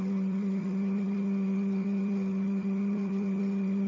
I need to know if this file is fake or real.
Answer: fake